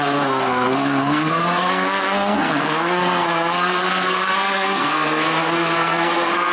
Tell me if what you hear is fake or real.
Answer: fake